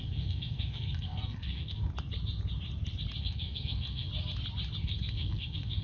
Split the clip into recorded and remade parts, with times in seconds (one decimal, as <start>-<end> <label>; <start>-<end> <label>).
0.0-1.9 remade; 1.9-3.2 recorded; 3.2-4.1 remade; 4.1-4.8 recorded; 4.8-5.8 remade